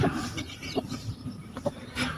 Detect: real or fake fake